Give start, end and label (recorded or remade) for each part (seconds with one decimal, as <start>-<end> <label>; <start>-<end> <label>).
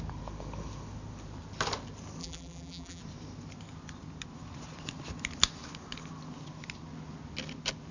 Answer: 0.0-2.2 recorded; 2.2-3.0 remade; 3.0-7.9 recorded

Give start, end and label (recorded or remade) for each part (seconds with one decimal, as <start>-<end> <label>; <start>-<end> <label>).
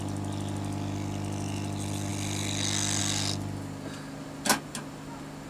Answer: 0.0-5.5 recorded